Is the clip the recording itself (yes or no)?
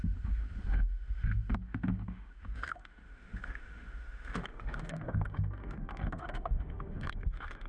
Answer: no